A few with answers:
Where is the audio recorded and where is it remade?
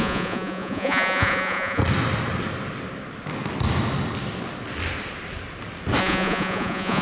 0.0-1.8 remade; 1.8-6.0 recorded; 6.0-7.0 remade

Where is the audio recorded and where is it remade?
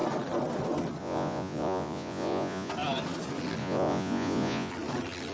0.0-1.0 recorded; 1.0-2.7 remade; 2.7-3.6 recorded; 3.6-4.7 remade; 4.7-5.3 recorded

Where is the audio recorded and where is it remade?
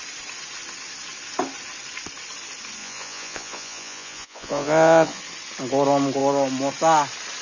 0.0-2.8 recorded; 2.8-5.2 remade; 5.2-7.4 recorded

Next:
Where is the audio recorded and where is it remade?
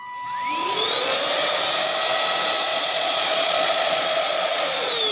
0.0-0.6 recorded; 0.6-1.1 remade; 1.1-2.7 recorded; 2.7-4.6 remade; 4.6-5.1 recorded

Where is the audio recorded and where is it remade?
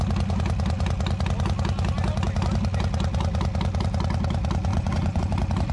0.0-4.7 recorded; 4.7-5.2 remade; 5.2-5.7 recorded